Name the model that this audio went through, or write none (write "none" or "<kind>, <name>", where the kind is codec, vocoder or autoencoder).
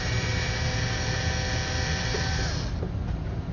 none